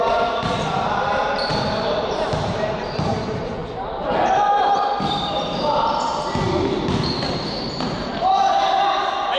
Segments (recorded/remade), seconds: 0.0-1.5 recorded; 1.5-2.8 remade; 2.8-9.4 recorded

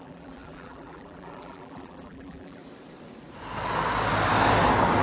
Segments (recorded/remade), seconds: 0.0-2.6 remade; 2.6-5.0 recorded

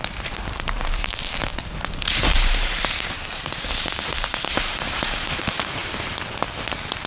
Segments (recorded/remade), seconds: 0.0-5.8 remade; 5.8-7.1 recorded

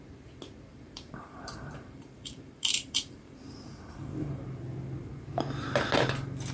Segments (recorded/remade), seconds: 0.0-0.7 recorded; 0.7-4.4 remade; 4.4-6.5 recorded

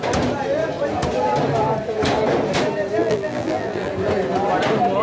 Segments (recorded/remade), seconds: 0.0-3.0 recorded; 3.0-3.9 remade; 3.9-5.0 recorded